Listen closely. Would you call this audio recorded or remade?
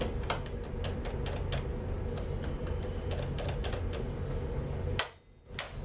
recorded